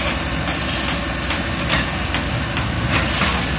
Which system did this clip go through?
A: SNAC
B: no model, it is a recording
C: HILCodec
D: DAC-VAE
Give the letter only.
B